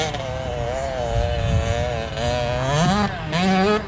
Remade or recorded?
recorded